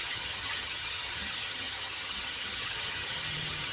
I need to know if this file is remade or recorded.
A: remade